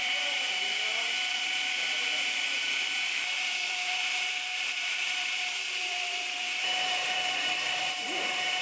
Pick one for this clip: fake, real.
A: fake